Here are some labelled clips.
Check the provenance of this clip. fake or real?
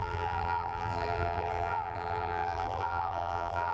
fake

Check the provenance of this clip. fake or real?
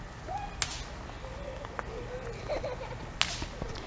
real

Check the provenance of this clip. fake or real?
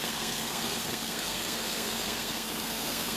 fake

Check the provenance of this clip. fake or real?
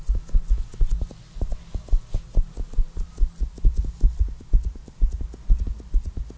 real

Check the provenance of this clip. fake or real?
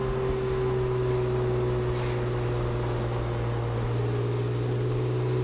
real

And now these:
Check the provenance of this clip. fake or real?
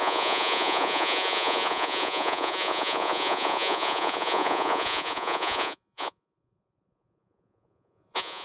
fake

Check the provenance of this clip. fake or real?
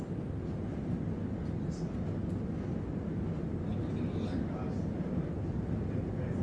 real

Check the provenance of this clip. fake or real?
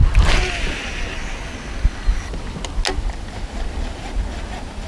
real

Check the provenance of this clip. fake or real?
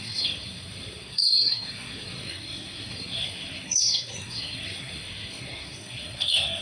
fake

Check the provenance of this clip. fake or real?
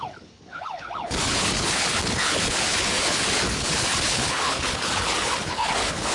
fake